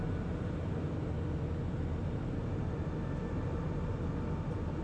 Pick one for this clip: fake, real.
real